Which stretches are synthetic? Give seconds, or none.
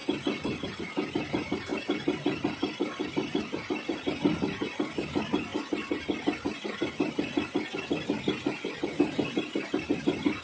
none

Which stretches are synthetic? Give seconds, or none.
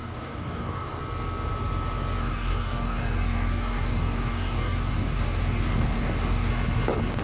0.0-1.0 (codec, DAC); 2.2-6.5